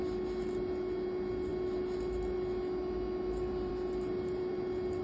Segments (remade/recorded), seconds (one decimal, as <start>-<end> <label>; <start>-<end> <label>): 0.0-5.0 recorded